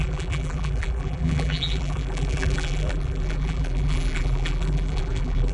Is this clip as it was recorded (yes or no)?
no